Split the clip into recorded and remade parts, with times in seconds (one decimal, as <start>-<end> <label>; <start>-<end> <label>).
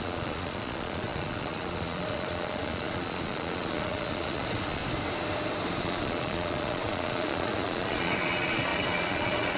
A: 0.0-4.8 remade; 4.8-5.8 recorded; 5.8-9.6 remade